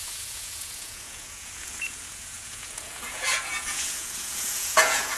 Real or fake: fake